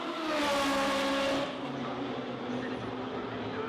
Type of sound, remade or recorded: recorded